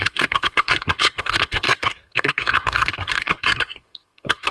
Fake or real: fake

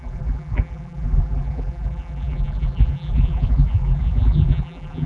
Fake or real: fake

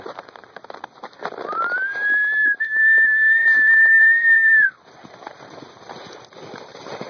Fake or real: fake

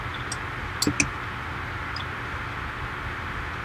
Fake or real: real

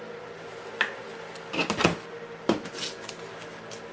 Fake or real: real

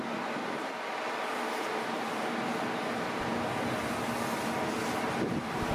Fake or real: real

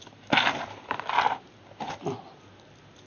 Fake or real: real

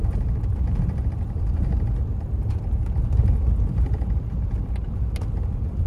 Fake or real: real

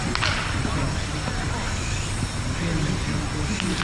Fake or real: real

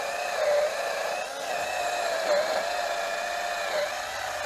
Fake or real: real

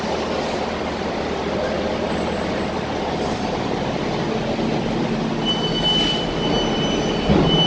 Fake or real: real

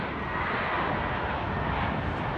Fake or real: real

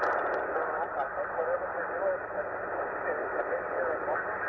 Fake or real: real